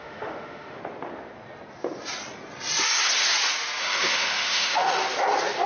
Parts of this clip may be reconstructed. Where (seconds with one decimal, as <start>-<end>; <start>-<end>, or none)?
0.0-0.8; 3.8-5.0